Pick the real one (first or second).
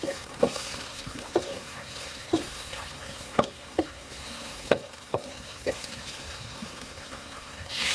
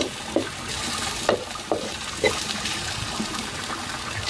second